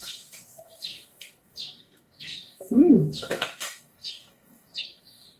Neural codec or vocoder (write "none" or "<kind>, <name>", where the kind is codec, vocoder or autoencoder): codec, DAC